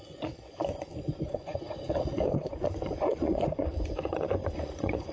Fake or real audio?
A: fake